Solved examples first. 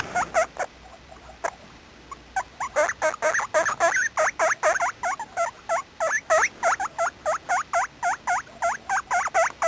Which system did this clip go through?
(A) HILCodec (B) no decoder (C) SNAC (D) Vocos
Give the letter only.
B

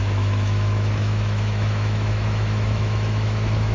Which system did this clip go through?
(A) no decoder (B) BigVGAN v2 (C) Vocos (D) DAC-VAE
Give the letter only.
D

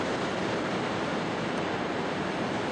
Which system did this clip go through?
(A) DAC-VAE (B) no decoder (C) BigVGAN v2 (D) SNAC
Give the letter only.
C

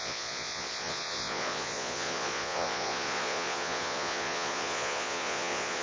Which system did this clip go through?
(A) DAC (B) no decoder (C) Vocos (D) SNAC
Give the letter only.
C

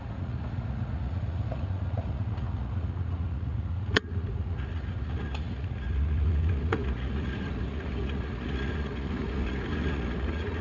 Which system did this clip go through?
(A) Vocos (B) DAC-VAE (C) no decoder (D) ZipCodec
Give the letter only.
A